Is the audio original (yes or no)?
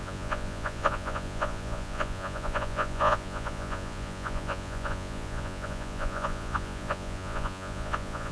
no